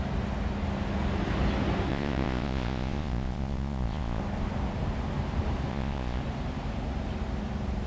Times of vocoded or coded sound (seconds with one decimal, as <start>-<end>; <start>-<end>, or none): 1.9-4.2; 5.7-6.2